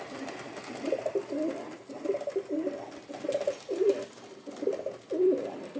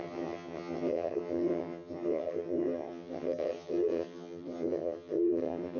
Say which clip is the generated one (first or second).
second